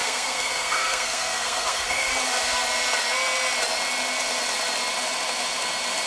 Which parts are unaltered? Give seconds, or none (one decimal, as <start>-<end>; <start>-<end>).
2.1-6.1